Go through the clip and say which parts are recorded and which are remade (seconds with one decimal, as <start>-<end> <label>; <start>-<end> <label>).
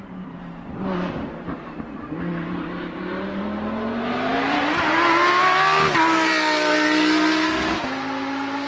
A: 0.0-3.4 remade; 3.4-8.7 recorded